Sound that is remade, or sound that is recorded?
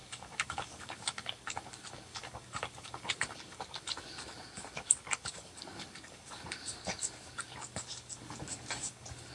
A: remade